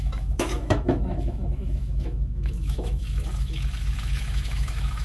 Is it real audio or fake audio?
fake